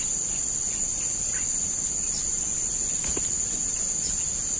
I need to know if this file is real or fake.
real